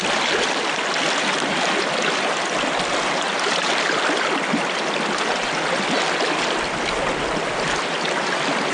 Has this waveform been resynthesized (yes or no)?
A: no